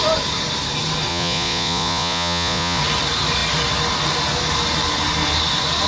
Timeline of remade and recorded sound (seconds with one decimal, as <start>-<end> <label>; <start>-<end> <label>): 0.0-1.1 recorded; 1.1-2.8 remade; 2.8-5.9 recorded